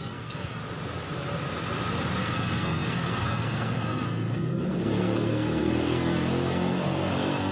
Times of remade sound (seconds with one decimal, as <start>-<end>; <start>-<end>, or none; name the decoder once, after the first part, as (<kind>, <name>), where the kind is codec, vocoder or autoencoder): 0.0-0.6 (codec, SNAC); 2.2-7.5